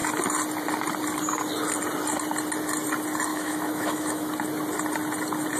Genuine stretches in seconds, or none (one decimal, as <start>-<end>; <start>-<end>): 0.0-3.3; 4.3-5.6